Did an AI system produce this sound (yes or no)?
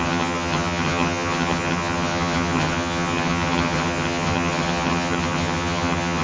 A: yes